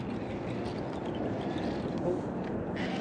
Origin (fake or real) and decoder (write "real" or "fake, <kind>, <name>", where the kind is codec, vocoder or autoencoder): real